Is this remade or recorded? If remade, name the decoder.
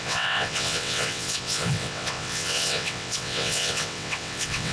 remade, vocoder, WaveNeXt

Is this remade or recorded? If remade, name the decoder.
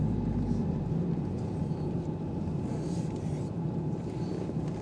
recorded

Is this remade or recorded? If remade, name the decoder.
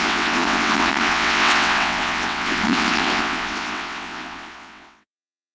remade, vocoder, WaveNeXt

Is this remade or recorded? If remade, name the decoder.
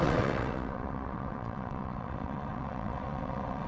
remade, vocoder, WaveNeXt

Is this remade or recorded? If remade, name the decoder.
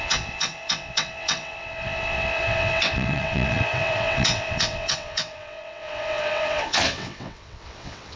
remade, vocoder, WaveNeXt